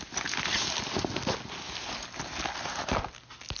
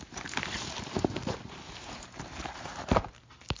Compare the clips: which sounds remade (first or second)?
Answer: second